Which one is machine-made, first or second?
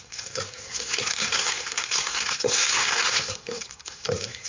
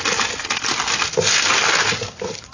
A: first